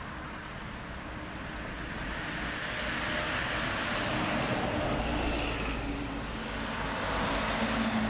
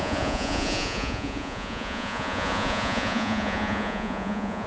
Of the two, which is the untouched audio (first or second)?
first